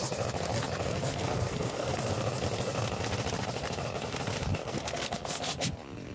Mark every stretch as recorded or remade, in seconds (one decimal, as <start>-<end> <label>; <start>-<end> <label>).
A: 0.0-0.9 recorded; 0.9-2.0 remade; 2.0-4.6 recorded; 4.6-5.4 remade; 5.4-6.1 recorded